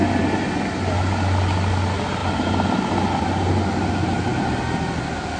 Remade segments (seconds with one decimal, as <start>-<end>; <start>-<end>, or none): none